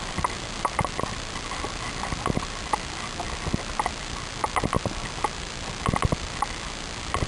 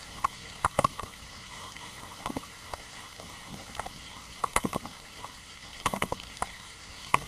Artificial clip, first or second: second